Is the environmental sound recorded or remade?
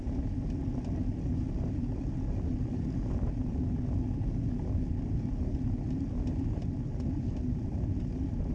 recorded